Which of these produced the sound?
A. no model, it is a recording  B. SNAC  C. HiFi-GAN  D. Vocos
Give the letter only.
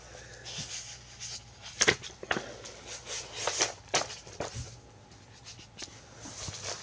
A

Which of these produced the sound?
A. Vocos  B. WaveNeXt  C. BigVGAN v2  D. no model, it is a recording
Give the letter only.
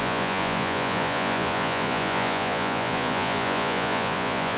A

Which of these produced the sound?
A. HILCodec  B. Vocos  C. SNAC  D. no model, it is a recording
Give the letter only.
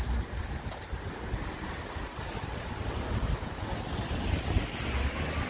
D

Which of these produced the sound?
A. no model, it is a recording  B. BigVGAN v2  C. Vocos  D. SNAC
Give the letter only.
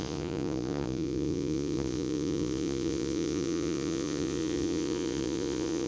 C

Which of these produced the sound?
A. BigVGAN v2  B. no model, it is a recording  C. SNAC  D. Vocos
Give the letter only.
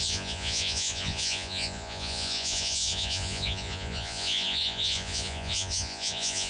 D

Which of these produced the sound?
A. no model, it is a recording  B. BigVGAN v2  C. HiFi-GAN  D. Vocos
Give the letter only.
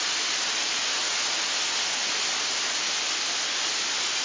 A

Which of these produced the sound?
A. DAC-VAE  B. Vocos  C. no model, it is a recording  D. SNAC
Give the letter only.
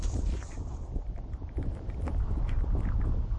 C